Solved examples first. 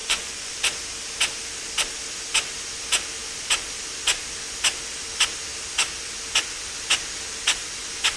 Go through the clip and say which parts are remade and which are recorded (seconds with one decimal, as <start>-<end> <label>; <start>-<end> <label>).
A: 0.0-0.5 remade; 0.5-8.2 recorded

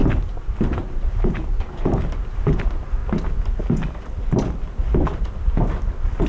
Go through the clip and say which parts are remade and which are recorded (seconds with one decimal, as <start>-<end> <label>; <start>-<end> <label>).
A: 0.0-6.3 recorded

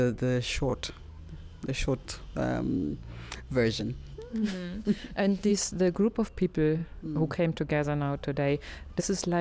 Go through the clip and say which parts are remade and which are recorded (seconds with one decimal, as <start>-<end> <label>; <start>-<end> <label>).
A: 0.0-4.3 recorded; 4.3-5.5 remade; 5.5-9.4 recorded

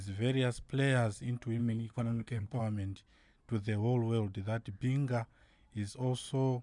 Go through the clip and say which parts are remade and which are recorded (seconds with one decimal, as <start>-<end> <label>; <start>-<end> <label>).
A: 0.0-1.6 recorded; 1.6-2.6 remade; 2.6-6.6 recorded

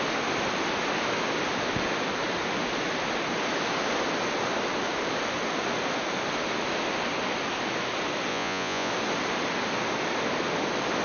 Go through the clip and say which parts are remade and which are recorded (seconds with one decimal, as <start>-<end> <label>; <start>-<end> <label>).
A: 0.0-8.3 recorded; 8.3-8.9 remade; 8.9-11.0 recorded